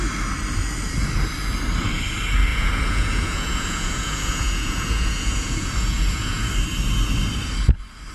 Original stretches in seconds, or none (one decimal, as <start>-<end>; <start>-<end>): 0.0-2.5; 6.5-8.1